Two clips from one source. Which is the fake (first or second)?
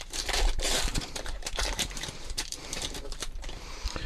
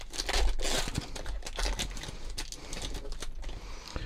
first